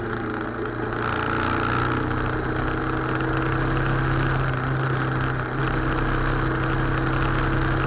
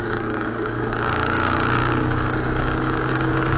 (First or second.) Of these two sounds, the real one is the first